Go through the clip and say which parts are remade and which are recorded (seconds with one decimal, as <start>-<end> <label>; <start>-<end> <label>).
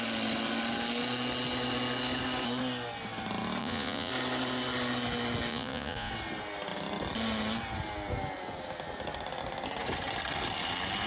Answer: 0.0-3.6 recorded; 3.6-4.1 remade; 4.1-5.5 recorded; 5.5-6.1 remade; 6.1-11.1 recorded